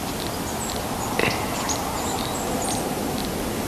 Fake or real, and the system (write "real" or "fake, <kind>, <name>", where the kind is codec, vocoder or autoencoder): real